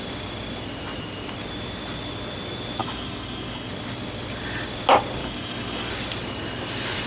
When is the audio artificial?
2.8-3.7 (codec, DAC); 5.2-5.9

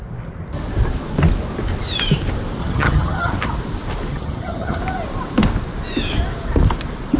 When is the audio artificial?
2.6-3.3 (vocoder, HiFi-GAN); 4.1-4.8

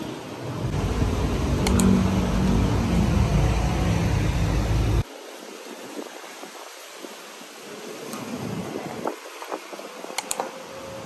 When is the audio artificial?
none

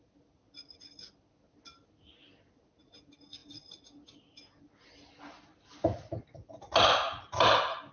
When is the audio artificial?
none

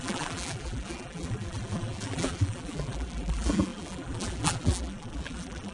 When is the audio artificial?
0.0-5.7 (vocoder, BigVGAN v2)

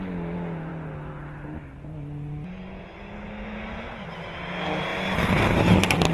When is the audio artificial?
none

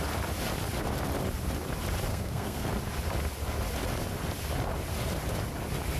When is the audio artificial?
2.1-2.7 (codec, SNAC)

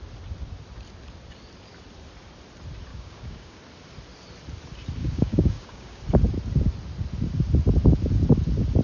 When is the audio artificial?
2.9-3.6 (codec, DAC); 5.0-6.0